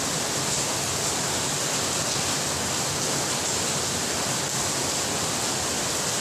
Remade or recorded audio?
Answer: recorded